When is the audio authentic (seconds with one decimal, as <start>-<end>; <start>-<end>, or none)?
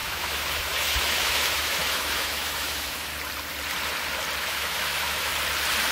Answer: 3.1-4.4; 5.3-5.9